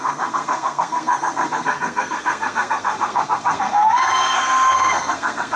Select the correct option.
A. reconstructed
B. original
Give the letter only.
A